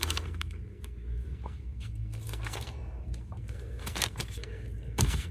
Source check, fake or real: fake